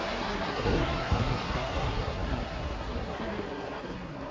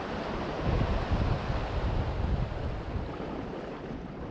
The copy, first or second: first